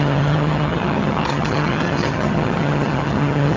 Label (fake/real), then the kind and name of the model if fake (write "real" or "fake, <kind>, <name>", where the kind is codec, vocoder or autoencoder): fake, vocoder, HiFi-GAN